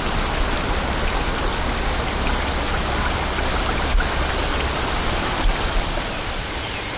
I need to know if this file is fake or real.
real